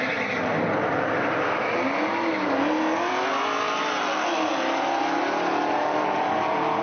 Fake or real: real